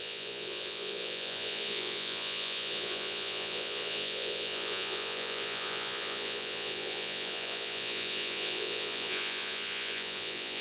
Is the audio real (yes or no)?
no